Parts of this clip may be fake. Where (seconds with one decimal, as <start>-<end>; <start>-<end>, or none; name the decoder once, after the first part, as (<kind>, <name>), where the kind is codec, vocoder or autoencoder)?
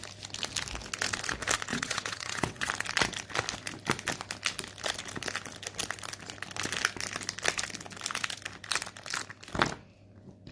1.7-2.7 (vocoder, WaveNeXt)